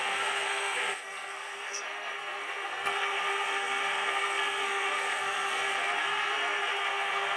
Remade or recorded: remade